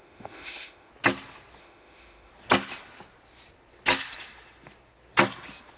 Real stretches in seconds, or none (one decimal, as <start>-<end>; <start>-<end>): 0.9-1.6; 2.3-5.8